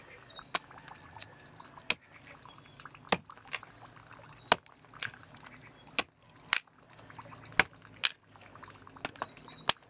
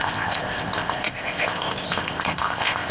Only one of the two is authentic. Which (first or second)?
first